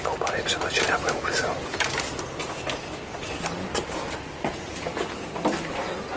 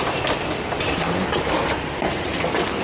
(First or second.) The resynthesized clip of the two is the second